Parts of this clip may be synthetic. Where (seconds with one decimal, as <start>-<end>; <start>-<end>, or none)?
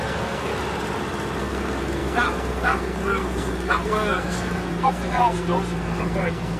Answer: 0.0-0.5; 1.4-6.6